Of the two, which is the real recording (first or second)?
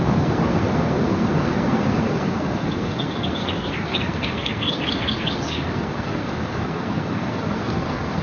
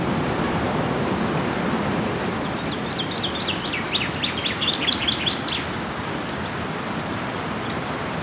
second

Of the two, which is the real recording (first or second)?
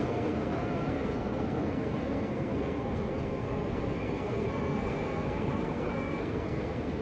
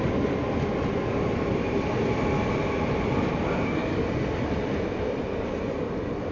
second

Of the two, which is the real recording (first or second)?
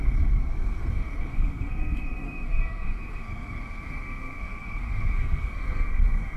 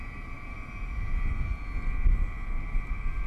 second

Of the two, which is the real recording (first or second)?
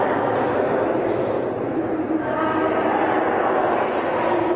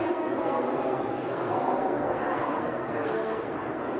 first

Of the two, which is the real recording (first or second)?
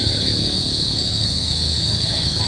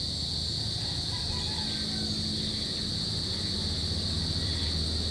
second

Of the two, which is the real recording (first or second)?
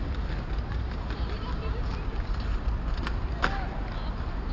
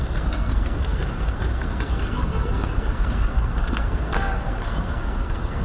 first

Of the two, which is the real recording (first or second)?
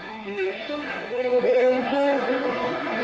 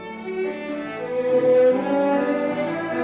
second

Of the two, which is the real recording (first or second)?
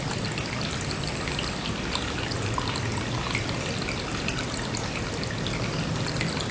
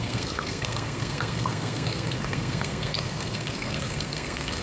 first